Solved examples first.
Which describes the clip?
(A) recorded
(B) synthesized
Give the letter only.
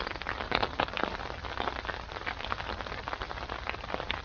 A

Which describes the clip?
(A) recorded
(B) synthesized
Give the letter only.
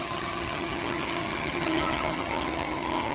B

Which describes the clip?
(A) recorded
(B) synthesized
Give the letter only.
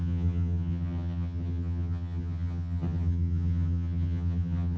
B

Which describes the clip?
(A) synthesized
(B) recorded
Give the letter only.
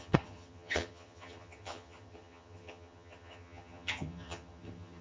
A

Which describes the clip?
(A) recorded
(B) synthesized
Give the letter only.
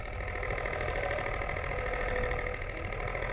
A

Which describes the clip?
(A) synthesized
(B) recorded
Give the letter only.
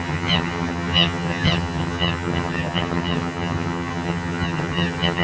A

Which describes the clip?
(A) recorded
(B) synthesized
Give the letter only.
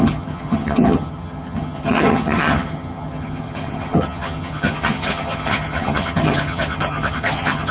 B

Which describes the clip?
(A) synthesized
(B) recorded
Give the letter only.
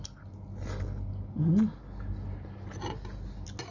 B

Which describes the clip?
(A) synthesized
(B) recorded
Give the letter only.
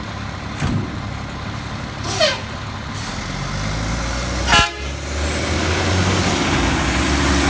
B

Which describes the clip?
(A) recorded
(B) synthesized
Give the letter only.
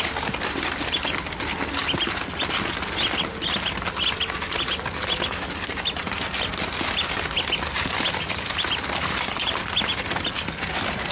A